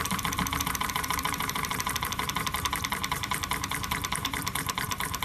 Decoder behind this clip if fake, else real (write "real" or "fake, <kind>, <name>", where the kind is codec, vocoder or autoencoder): fake, vocoder, BigVGAN v2